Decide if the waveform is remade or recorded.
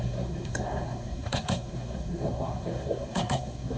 remade